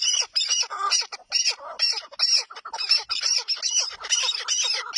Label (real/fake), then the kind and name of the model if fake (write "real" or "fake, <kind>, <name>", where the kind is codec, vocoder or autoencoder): real